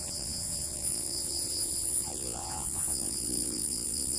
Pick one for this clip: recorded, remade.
remade